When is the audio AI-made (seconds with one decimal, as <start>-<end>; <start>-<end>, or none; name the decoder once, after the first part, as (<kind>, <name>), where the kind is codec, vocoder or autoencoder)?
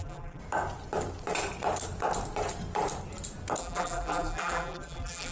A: 0.0-0.4 (vocoder, BigVGAN v2); 3.6-5.3